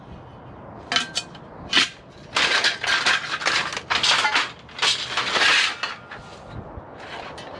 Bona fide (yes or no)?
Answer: yes